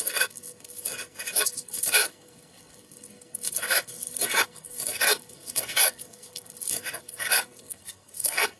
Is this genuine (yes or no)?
no